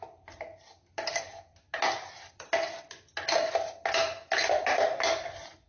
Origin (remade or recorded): recorded